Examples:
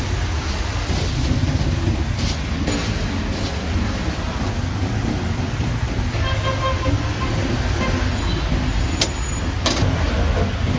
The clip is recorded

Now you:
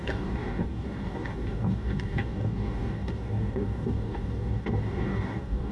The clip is remade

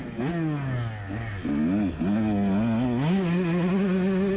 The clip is recorded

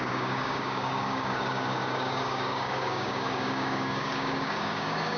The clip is remade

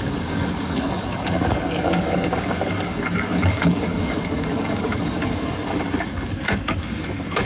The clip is remade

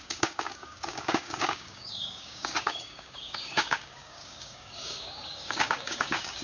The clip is remade